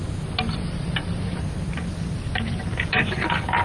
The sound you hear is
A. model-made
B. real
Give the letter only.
B